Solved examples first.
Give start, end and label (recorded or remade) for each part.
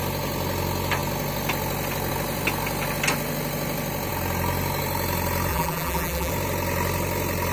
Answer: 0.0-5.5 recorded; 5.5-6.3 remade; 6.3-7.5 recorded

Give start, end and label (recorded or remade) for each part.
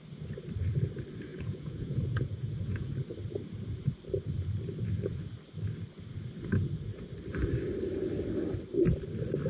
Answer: 0.0-1.3 recorded; 1.3-2.9 remade; 2.9-9.5 recorded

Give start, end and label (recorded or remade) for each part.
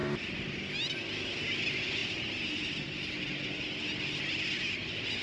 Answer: 0.0-5.2 recorded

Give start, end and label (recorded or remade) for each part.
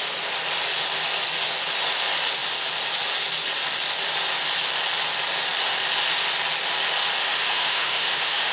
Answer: 0.0-7.2 recorded; 7.2-8.5 remade